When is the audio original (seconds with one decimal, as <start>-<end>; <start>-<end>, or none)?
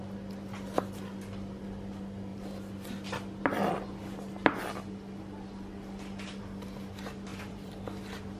0.0-7.3; 8.0-8.4